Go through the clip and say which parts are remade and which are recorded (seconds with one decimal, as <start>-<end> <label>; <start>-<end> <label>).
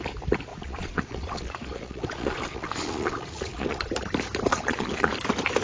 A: 0.0-0.5 recorded; 0.5-3.9 remade; 3.9-4.5 recorded; 4.5-5.1 remade; 5.1-5.6 recorded